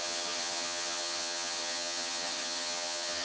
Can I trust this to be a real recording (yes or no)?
no